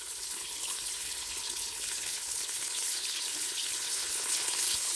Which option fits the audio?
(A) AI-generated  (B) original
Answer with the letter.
A